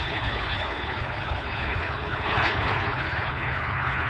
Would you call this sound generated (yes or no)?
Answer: yes